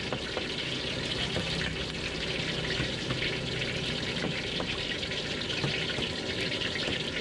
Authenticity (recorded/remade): recorded